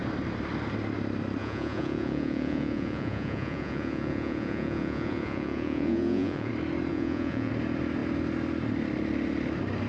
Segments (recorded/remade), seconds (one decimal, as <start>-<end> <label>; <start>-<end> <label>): 0.0-1.4 recorded; 1.4-6.5 remade; 6.5-6.9 recorded; 6.9-7.5 remade; 7.5-9.9 recorded